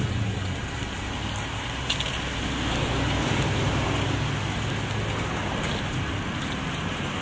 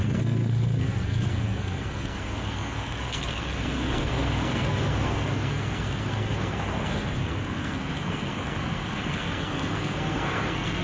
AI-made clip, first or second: second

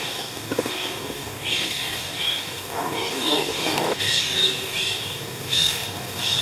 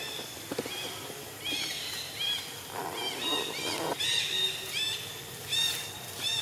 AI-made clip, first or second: first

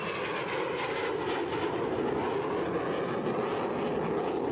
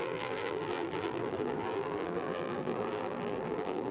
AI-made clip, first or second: second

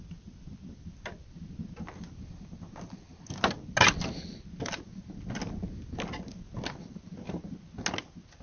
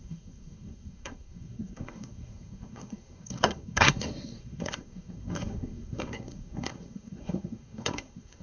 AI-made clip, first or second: second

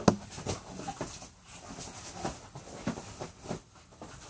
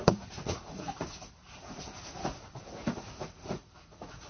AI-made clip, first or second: second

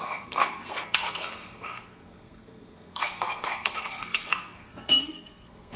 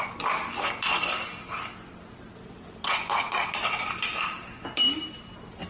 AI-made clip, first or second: first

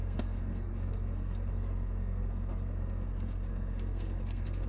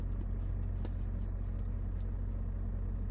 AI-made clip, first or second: first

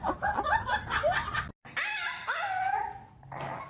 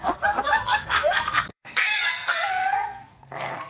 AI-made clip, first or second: second